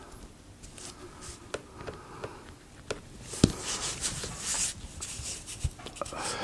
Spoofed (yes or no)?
no